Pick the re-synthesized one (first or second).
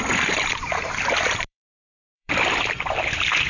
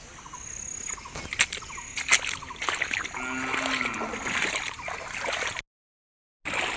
first